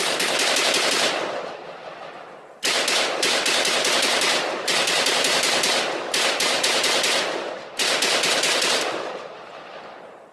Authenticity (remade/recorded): recorded